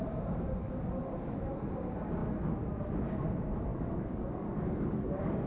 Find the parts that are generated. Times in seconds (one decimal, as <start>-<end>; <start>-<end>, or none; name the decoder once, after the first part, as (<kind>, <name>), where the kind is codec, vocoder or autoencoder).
0.6-1.5 (codec, DAC); 3.7-5.5